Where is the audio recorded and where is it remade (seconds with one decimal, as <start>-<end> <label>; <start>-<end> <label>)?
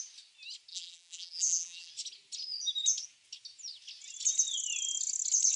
0.0-0.7 recorded; 0.7-1.9 remade; 1.9-5.6 recorded